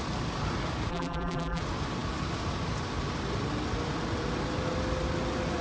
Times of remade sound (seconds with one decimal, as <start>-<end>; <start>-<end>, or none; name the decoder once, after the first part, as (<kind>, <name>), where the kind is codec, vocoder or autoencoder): 0.9-1.6 (vocoder, BigVGAN v2)